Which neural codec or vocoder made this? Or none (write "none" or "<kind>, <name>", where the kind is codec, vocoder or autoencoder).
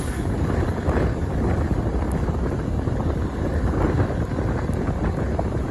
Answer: none